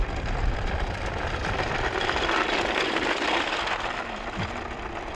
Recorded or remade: recorded